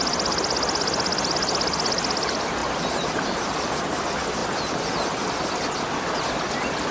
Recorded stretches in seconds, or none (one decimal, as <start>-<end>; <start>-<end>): 0.0-2.6; 3.7-6.9